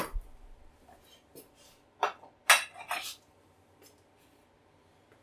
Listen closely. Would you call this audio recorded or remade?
recorded